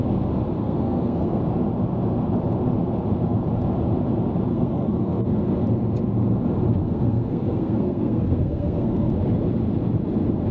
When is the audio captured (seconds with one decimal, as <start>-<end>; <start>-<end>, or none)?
0.0-0.6; 1.4-4.5; 5.2-6.8; 9.1-10.5